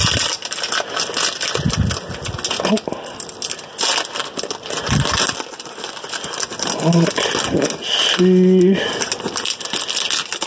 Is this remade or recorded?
recorded